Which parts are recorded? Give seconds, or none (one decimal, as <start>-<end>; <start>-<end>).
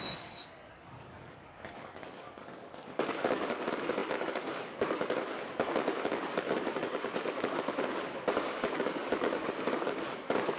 none